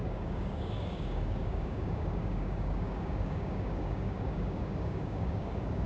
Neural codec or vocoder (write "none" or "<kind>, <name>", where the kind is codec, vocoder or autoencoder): codec, DAC